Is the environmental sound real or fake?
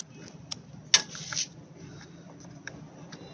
real